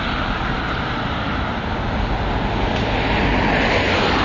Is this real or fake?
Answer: real